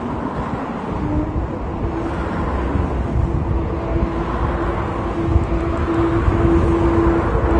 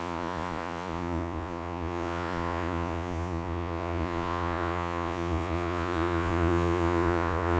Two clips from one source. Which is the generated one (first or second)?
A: second